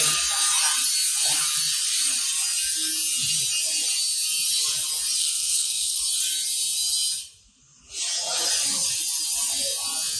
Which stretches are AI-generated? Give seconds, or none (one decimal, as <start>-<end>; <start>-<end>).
5.2-6.0